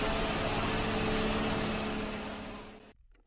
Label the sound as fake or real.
real